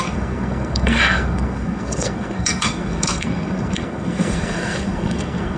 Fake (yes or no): yes